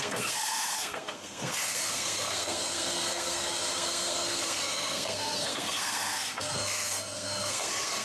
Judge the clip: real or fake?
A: fake